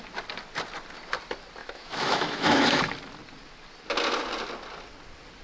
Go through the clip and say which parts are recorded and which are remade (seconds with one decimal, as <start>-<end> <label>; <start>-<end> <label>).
0.0-1.6 recorded; 1.6-2.8 remade; 2.8-5.4 recorded